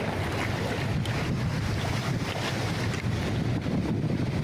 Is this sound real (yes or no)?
yes